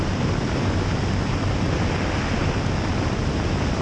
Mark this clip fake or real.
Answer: real